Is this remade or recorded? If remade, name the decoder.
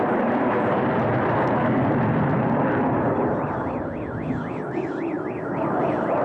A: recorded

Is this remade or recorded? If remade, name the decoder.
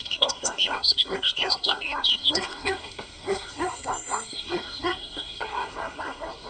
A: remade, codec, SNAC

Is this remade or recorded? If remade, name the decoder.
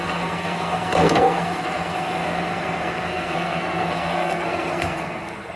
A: remade, codec, SNAC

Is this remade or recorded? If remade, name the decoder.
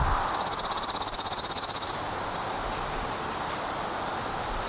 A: recorded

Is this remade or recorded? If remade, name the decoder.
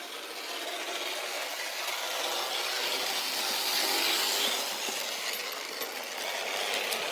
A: recorded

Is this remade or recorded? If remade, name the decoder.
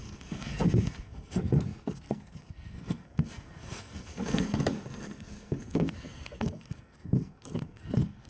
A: remade, codec, SNAC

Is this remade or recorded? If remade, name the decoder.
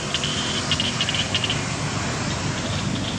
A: recorded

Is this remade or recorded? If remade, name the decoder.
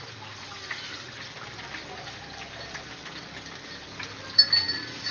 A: recorded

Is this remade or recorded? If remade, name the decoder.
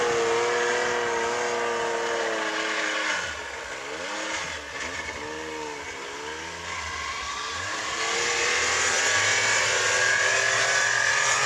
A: recorded